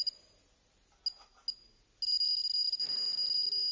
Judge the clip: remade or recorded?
recorded